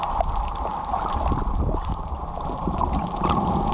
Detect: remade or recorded recorded